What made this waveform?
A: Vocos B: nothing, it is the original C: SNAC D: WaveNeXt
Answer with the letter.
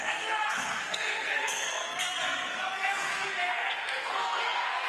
C